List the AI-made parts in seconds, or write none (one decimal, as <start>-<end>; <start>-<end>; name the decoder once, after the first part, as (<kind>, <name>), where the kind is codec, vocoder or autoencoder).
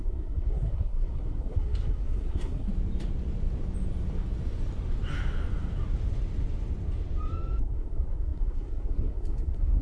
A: 0.0-2.7 (codec, SNAC); 7.6-9.8